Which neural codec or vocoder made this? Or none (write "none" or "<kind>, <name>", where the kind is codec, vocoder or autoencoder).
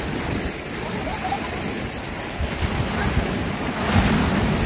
none